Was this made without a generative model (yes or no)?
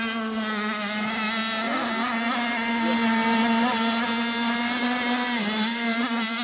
yes